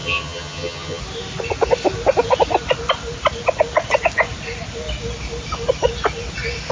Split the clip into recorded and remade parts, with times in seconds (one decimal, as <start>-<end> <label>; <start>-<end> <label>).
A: 0.0-1.0 remade; 1.0-6.7 recorded

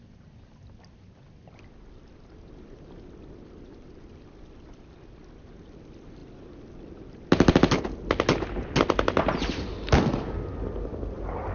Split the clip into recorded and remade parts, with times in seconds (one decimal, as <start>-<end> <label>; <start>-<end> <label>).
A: 0.0-11.5 recorded

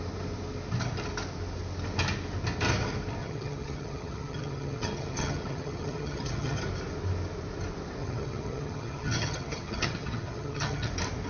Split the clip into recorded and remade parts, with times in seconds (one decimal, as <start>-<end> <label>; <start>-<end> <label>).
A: 0.0-3.2 recorded; 3.2-6.6 remade; 6.6-8.0 recorded; 8.0-10.9 remade; 10.9-11.3 recorded

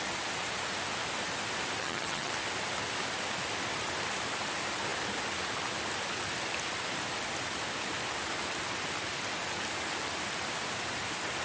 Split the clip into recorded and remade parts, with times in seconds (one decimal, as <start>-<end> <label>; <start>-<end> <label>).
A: 0.0-1.8 recorded; 1.8-2.3 remade; 2.3-11.4 recorded